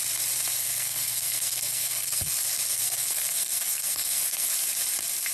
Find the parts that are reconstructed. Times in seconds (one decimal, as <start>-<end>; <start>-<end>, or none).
0.6-2.3; 2.7-4.5